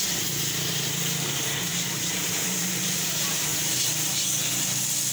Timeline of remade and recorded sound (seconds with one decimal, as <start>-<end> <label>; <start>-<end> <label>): 0.0-1.7 recorded; 1.7-3.9 remade; 3.9-5.1 recorded